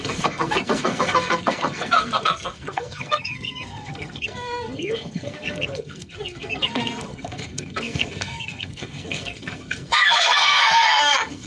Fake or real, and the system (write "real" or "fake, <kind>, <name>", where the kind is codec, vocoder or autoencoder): fake, codec, SNAC